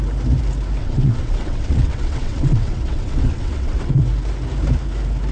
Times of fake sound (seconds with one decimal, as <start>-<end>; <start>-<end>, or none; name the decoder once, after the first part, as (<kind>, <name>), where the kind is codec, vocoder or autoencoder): 0.8-4.0 (vocoder, WaveNeXt)